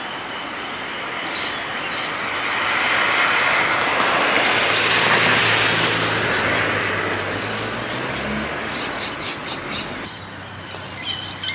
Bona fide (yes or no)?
yes